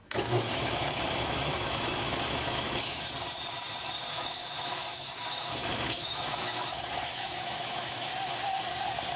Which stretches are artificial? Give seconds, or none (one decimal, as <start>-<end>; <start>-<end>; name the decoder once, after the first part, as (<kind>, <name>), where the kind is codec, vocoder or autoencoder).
0.0-3.0 (autoencoder, DAC-VAE); 4.1-8.1

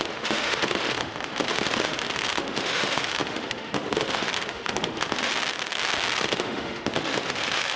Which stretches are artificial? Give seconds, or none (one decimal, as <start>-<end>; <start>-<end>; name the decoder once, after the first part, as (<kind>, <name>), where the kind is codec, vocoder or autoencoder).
0.0-5.3 (autoencoder, DAC-VAE); 6.2-7.8

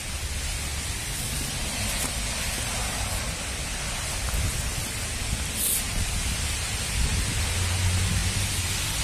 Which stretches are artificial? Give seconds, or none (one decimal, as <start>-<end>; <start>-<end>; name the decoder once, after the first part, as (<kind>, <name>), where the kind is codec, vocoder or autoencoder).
none

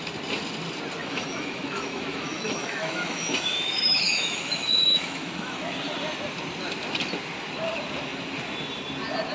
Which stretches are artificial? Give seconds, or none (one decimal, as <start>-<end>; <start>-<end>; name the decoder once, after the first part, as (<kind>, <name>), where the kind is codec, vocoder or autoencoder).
1.0-5.8 (autoencoder, DAC-VAE)

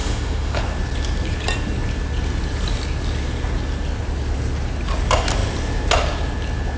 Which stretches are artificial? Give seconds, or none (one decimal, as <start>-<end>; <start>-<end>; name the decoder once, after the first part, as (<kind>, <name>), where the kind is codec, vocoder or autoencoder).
0.0-0.6 (autoencoder, DAC-VAE)

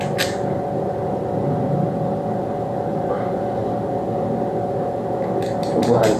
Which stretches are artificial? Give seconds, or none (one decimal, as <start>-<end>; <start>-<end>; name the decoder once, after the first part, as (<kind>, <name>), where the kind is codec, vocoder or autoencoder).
none

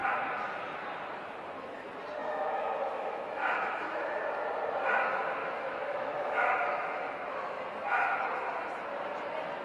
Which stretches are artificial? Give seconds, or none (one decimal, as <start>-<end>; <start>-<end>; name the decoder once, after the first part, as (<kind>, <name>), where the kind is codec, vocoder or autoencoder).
2.2-4.2 (autoencoder, DAC-VAE); 5.4-7.6

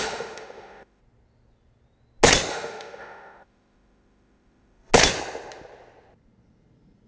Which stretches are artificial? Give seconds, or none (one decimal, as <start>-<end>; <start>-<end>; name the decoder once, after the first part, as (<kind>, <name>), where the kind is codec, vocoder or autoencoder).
0.0-1.0 (autoencoder, DAC-VAE); 2.5-4.9